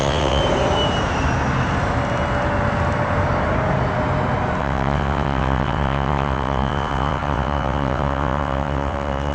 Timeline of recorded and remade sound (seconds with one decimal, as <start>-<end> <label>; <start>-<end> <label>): 0.0-0.4 remade; 0.4-4.6 recorded; 4.6-9.3 remade